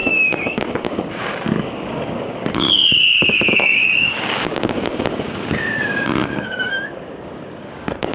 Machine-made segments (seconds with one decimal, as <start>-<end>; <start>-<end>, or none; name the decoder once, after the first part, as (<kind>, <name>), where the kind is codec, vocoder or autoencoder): 0.0-8.1 (codec, DAC)